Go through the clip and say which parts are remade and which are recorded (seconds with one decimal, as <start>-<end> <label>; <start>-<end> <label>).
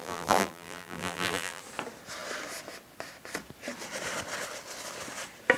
0.0-1.6 remade; 1.6-5.6 recorded